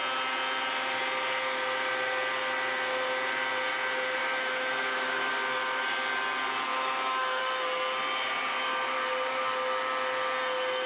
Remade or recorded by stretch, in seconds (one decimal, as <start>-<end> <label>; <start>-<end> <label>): 0.0-4.2 recorded; 4.2-5.3 remade; 5.3-6.7 recorded; 6.7-7.4 remade; 7.4-10.9 recorded